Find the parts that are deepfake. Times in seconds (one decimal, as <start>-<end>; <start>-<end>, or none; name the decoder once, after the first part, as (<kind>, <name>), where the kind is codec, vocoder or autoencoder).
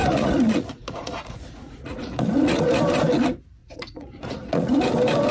0.0-2.8 (vocoder, Vocos); 3.6-4.8